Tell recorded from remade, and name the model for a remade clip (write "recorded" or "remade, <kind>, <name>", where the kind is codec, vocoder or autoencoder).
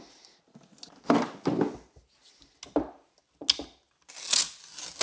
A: recorded